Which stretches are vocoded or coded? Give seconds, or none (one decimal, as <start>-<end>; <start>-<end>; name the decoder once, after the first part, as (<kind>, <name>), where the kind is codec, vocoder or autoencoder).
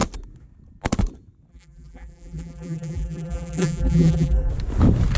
1.5-4.5 (vocoder, BigVGAN v2)